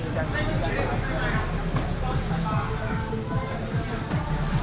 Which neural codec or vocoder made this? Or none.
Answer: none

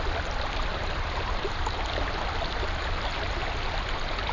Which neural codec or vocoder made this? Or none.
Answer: none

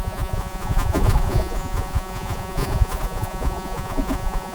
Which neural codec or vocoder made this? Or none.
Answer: vocoder, Vocos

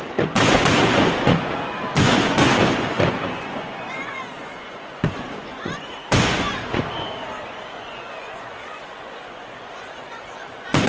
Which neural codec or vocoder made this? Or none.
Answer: vocoder, Vocos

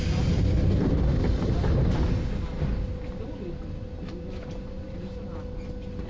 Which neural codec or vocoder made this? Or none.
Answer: none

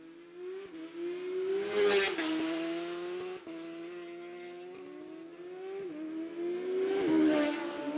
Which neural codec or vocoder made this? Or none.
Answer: none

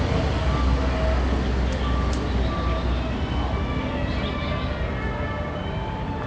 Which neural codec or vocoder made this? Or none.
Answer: none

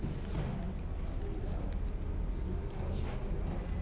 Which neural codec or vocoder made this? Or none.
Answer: none